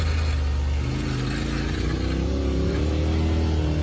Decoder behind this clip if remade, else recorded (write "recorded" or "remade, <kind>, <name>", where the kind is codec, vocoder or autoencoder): recorded